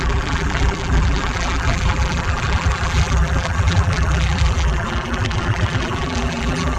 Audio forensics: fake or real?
fake